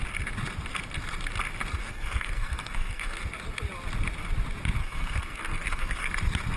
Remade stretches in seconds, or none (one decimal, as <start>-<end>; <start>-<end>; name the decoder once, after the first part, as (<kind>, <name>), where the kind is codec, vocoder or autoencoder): 1.8-3.2 (codec, SNAC); 4.8-6.1